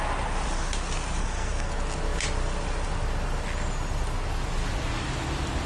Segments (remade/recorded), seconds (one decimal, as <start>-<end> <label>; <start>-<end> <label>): 0.0-1.2 recorded; 1.2-1.7 remade; 1.7-5.7 recorded

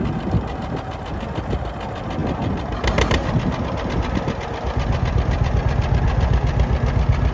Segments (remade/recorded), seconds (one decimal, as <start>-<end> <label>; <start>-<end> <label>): 0.0-7.3 recorded

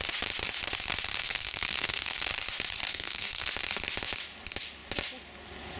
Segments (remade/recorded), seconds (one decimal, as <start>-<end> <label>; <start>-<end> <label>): 0.0-1.2 recorded; 1.2-2.3 remade; 2.3-2.9 recorded; 2.9-3.5 remade; 3.5-5.8 recorded

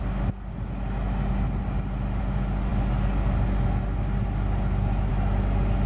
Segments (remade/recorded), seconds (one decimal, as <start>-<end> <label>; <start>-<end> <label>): 0.0-5.9 recorded

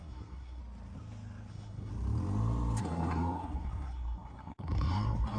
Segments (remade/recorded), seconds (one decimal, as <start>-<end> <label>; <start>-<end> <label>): 0.0-0.6 remade; 0.6-1.5 recorded; 1.5-1.9 remade; 1.9-2.8 recorded; 2.8-5.4 remade